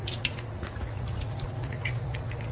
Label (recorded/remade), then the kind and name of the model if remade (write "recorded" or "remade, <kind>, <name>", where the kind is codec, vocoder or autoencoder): remade, vocoder, Vocos